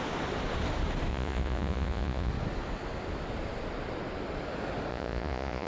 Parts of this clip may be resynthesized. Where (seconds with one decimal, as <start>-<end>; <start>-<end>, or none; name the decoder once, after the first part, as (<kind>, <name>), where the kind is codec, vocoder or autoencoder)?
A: 1.1-2.3 (vocoder, Vocos); 4.9-5.7